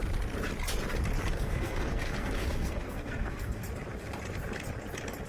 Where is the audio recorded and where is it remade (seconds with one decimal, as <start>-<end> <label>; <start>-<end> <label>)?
0.0-1.2 recorded; 1.2-3.6 remade; 3.6-5.3 recorded